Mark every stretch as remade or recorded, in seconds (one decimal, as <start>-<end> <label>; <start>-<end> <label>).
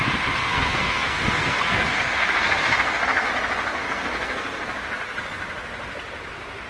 0.0-0.4 recorded; 0.4-3.3 remade; 3.3-3.7 recorded; 3.7-4.7 remade; 4.7-6.7 recorded